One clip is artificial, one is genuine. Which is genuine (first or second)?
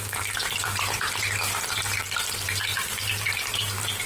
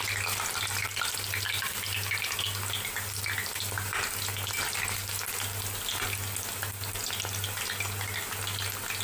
second